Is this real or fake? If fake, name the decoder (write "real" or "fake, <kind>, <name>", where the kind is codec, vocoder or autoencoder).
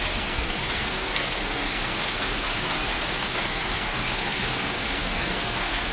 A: fake, codec, SNAC